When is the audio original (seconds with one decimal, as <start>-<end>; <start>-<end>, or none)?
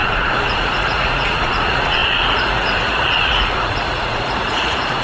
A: none